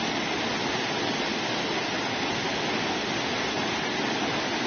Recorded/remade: recorded